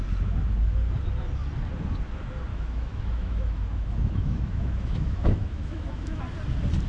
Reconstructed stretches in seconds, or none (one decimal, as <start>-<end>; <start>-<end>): 2.5-6.2